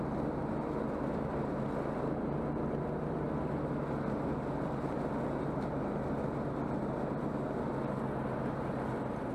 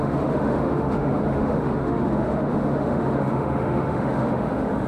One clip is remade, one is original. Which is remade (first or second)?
second